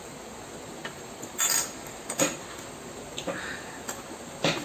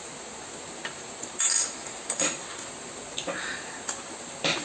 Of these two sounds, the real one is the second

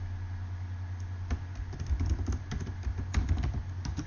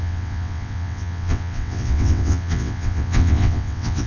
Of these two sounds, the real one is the first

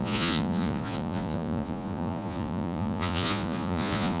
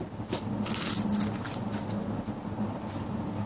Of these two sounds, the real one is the second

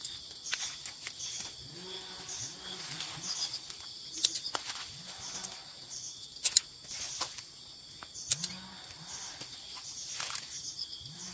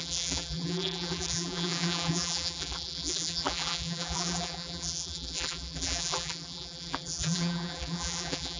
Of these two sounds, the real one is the first